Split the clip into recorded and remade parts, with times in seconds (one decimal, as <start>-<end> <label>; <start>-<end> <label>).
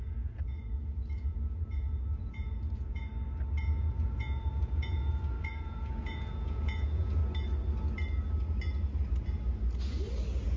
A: 0.0-3.1 remade; 3.1-3.6 recorded; 3.6-7.2 remade; 7.2-10.6 recorded